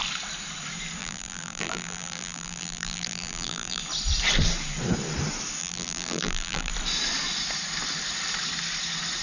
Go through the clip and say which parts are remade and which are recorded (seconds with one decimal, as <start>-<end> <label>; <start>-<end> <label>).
0.0-1.0 recorded; 1.0-3.8 remade; 3.8-5.6 recorded; 5.6-6.7 remade; 6.7-9.2 recorded